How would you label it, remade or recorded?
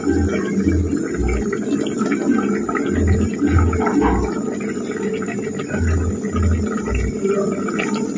recorded